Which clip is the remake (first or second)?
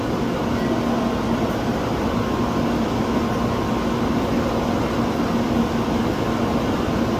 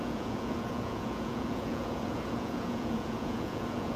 second